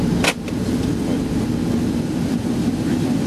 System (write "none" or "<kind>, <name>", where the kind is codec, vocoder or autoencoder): none